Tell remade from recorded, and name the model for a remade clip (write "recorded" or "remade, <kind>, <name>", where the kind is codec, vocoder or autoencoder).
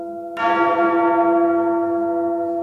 recorded